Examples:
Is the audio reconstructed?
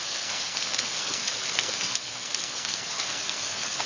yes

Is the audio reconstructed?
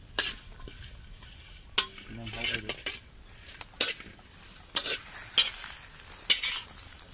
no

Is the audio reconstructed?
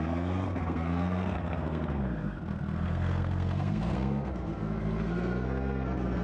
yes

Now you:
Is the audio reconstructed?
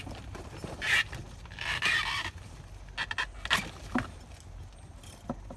no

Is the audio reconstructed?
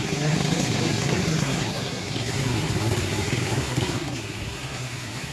yes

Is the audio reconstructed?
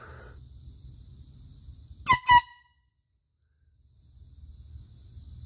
no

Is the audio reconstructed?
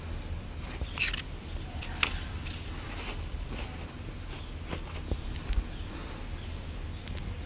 no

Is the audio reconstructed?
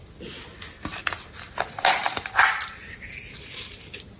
no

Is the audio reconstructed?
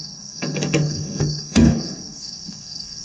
yes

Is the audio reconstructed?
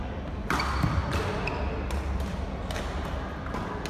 no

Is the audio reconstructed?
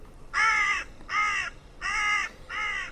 no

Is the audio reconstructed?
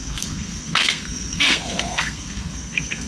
yes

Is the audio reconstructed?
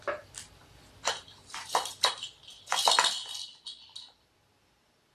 no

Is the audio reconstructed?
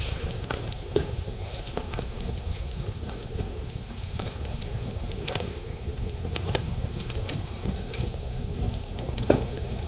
yes